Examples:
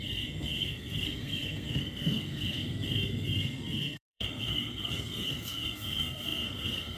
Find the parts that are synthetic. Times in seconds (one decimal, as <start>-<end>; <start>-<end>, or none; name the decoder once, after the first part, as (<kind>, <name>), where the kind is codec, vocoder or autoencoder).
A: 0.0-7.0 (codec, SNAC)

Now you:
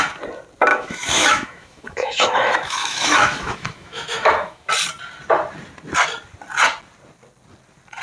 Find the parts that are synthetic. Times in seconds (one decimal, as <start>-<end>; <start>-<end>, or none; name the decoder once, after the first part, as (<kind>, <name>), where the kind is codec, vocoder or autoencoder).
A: 0.7-4.7 (autoencoder, DAC-VAE)

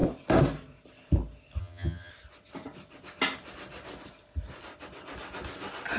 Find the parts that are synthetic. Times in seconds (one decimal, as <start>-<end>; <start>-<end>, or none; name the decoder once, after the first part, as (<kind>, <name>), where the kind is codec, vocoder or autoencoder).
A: 1.6-2.1 (vocoder, HiFi-GAN)

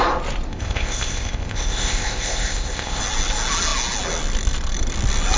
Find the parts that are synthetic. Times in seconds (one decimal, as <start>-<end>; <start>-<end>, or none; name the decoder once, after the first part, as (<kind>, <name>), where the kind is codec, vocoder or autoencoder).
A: 0.5-3.0 (codec, ZipCodec)

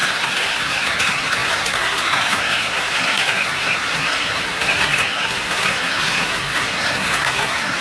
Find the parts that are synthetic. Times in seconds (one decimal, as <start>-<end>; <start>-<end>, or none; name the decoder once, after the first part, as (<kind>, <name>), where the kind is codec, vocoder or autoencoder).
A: 0.0-7.8 (codec, SNAC)